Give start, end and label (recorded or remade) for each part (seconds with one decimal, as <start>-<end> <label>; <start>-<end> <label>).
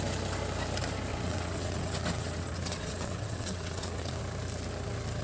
0.0-1.1 recorded; 1.1-4.2 remade; 4.2-5.2 recorded